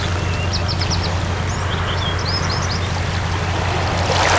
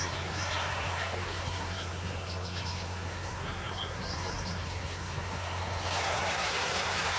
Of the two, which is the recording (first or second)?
first